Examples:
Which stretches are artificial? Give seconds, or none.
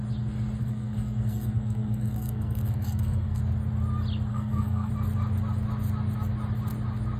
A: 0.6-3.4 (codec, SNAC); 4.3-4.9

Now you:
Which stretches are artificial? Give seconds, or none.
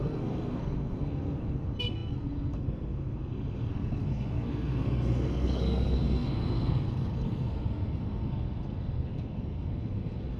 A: 0.0-10.4 (codec, SNAC)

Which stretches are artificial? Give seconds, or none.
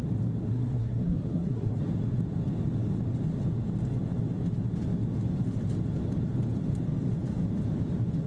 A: 0.5-1.8 (codec, SNAC)